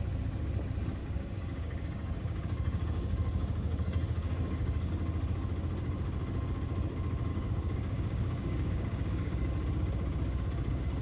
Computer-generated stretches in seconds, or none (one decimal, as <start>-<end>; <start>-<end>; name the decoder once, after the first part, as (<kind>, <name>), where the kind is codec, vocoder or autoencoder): 1.0-4.9 (codec, DAC); 7.3-9.5